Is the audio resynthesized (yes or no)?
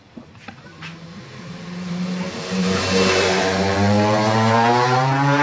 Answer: yes